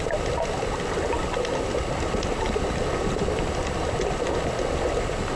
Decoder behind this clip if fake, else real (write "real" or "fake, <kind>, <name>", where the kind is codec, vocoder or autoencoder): real